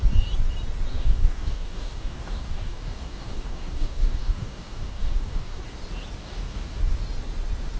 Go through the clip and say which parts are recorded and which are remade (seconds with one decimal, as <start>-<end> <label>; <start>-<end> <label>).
0.0-0.9 recorded; 0.9-5.6 remade; 5.6-6.2 recorded; 6.2-6.8 remade; 6.8-7.8 recorded